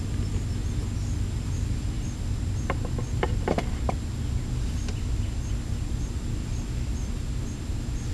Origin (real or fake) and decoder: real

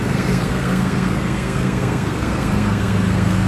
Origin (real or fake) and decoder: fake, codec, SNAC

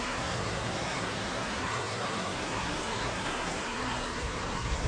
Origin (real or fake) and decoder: fake, codec, SNAC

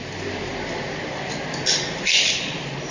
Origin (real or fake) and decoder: real